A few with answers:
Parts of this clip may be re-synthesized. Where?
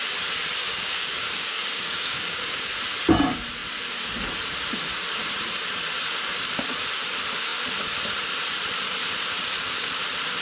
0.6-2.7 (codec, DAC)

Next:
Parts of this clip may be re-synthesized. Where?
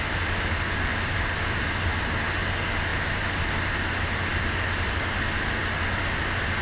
none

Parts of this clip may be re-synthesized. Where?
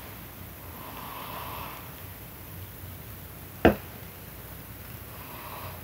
none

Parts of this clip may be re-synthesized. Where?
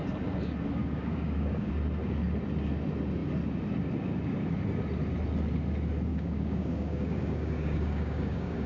0.8-1.7 (codec, DAC); 6.1-8.7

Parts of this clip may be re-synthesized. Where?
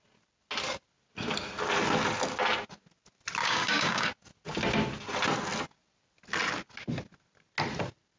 3.4-4.1 (codec, DAC)